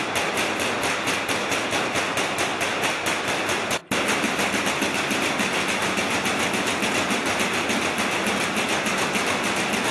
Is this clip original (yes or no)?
yes